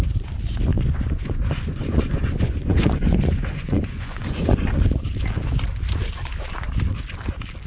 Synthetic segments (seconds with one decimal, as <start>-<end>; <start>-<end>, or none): 0.7-5.0